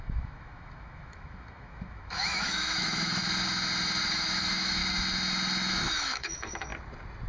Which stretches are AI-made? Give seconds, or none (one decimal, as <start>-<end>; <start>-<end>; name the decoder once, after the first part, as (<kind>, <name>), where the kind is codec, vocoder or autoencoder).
0.0-3.2 (autoencoder, DAC-VAE); 4.1-4.8; 5.7-6.7